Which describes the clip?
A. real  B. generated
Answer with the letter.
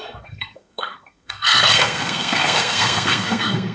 B